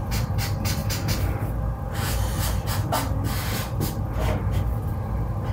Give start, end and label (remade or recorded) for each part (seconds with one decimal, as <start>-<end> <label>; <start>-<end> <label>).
0.0-5.5 recorded